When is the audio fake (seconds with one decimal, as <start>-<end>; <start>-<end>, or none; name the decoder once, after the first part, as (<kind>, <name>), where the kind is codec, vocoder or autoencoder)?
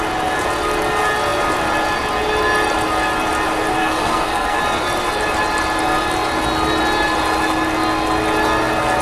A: 3.8-4.6 (codec, SNAC)